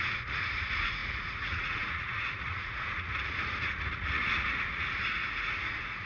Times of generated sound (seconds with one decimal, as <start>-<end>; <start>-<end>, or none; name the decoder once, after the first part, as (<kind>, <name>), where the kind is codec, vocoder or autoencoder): 0.0-6.1 (vocoder, Vocos)